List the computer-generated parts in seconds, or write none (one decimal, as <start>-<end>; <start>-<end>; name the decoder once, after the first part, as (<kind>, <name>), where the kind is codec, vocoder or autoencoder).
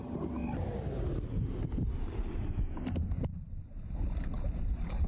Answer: 0.0-0.4 (vocoder, BigVGAN v2); 1.9-5.1